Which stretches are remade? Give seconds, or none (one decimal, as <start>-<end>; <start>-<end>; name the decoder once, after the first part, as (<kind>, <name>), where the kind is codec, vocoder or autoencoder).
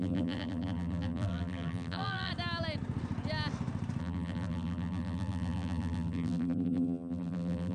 0.0-2.3 (vocoder, BigVGAN v2); 4.0-7.7